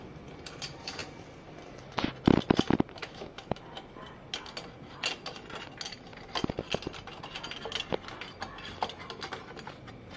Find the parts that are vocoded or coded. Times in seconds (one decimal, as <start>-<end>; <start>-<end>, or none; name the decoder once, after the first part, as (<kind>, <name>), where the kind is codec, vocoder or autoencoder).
3.0-3.6 (autoencoder, DAC-VAE)